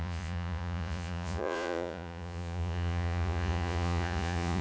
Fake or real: fake